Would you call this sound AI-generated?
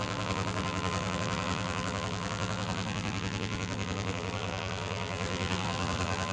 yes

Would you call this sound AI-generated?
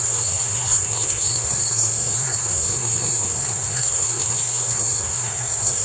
yes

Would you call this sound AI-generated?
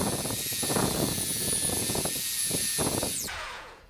yes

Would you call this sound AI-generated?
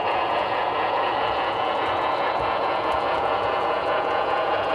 yes